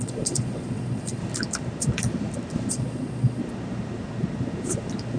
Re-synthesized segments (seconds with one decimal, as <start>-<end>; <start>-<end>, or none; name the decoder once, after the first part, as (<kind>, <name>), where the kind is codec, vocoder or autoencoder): 0.0-1.2 (vocoder, Vocos); 2.7-3.4